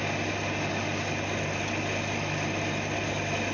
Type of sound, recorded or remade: recorded